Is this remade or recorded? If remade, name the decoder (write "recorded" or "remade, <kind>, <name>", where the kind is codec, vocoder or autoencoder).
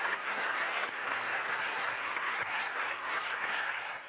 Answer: remade, codec, SNAC